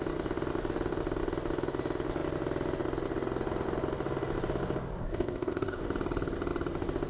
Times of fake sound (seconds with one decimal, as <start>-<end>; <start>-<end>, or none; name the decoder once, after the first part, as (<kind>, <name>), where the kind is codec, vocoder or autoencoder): 5.0-5.8 (codec, ZipCodec)

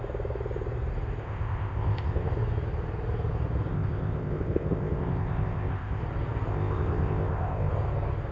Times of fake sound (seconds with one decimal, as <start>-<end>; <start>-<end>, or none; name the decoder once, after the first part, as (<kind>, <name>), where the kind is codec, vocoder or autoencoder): 1.2-2.3 (codec, ZipCodec); 3.7-6.0; 6.5-7.7

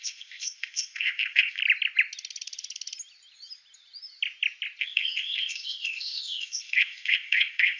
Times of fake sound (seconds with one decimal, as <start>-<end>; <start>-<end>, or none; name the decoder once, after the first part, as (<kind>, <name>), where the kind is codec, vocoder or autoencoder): 0.0-1.6 (codec, ZipCodec); 4.8-7.8

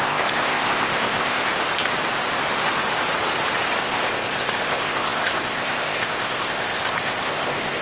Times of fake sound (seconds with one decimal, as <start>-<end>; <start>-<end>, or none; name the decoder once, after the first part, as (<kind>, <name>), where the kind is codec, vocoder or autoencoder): 0.0-1.5 (codec, ZipCodec); 3.8-7.8